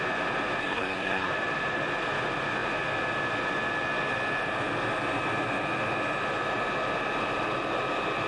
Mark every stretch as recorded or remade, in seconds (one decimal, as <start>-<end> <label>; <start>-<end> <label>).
0.0-0.6 recorded; 0.6-1.3 remade; 1.3-8.3 recorded